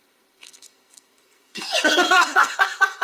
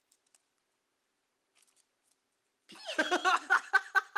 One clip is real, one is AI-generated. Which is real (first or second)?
second